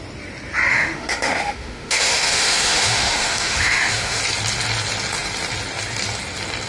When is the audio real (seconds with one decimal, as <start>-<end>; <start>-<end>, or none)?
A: 0.0-0.7; 4.2-6.7